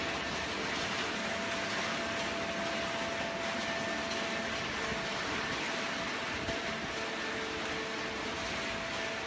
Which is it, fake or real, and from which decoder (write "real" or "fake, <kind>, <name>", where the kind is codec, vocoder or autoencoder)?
real